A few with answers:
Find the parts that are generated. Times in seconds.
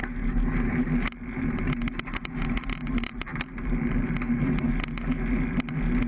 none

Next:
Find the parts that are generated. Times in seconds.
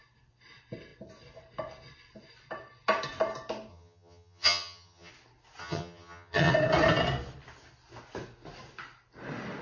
3.7-5.1 (vocoder, HiFi-GAN); 5.6-6.5